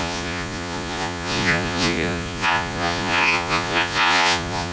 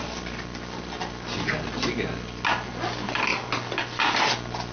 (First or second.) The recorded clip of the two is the second